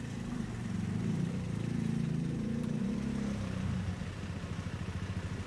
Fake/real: fake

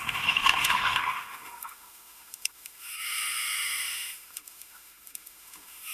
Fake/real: fake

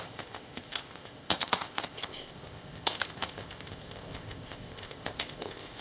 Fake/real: fake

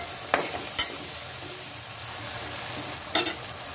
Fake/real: real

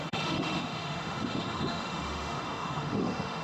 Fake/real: fake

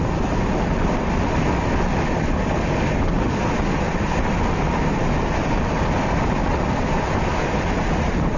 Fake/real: real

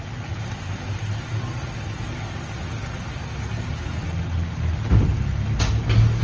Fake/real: real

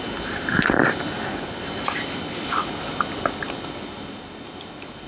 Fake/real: real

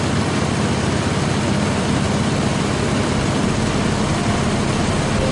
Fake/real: real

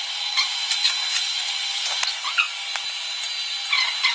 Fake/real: real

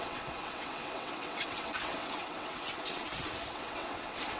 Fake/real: fake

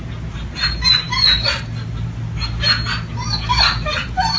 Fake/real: real